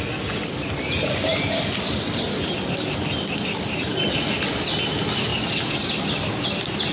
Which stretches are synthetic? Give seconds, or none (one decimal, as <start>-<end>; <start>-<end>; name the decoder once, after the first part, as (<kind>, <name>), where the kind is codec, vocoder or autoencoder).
1.3-4.4 (vocoder, BigVGAN v2)